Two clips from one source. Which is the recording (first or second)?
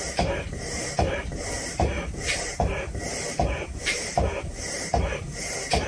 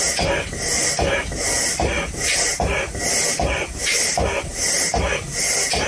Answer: second